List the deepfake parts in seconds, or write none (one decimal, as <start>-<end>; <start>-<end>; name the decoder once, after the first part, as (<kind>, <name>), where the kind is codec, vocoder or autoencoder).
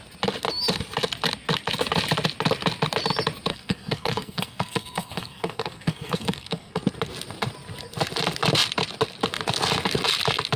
3.5-6.8 (codec, SNAC)